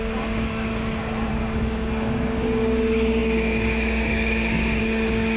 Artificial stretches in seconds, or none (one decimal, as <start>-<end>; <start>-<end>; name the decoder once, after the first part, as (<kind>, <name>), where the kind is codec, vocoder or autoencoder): 0.0-0.7 (codec, DAC); 1.3-5.4